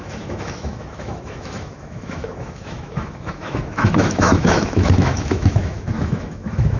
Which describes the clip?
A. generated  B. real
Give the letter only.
A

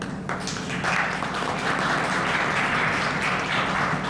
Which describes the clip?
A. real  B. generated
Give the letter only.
A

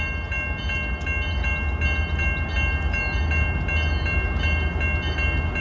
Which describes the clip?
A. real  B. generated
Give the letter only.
A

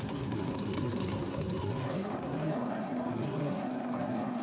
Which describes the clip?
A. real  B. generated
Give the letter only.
B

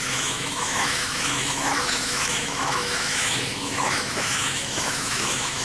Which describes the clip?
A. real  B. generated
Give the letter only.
B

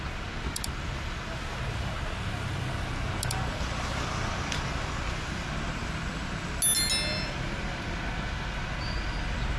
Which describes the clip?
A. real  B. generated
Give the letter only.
A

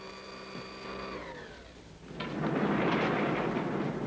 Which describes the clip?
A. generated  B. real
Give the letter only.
B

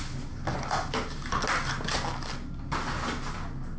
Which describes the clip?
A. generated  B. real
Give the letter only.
B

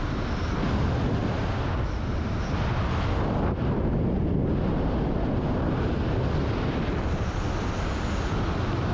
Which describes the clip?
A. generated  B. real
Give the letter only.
B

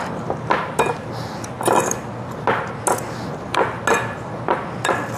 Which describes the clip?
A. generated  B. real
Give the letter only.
B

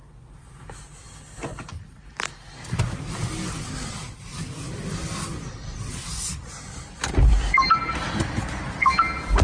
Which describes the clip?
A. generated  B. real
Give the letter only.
B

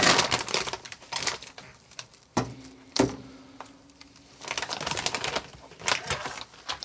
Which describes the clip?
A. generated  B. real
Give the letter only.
A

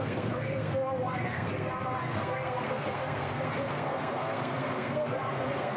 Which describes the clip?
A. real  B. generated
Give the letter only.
B